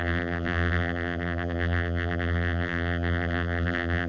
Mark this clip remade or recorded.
remade